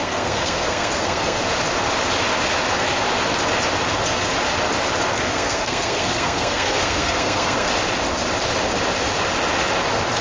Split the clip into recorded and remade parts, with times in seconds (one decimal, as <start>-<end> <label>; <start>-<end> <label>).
0.0-1.4 remade; 1.4-5.1 recorded; 5.1-7.7 remade; 7.7-10.2 recorded